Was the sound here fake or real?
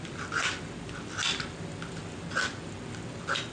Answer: real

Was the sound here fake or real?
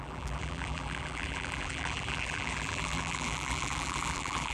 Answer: fake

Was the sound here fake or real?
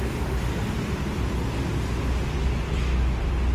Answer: real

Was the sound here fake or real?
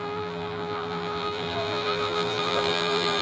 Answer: fake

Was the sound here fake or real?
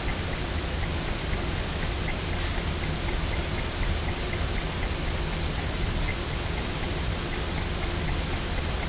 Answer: real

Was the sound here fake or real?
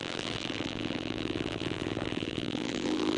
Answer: fake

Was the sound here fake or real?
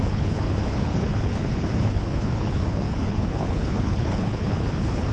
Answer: fake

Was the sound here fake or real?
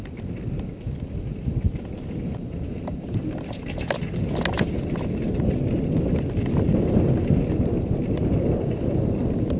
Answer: real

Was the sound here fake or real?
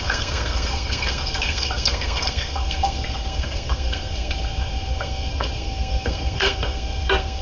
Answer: fake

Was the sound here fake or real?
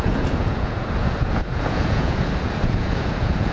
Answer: fake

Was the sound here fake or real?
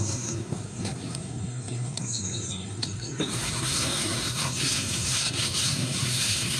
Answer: fake